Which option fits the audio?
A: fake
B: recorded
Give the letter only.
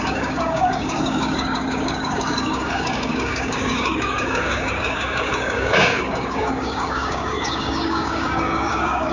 A